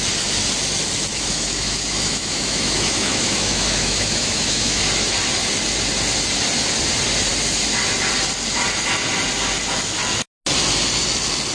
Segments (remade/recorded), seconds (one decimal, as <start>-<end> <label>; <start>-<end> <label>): 0.0-1.1 recorded; 1.1-4.8 remade; 4.8-11.5 recorded